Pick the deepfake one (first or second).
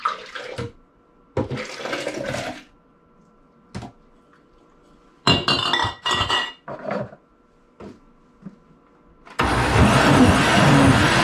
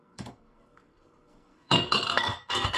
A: second